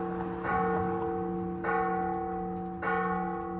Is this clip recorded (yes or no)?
yes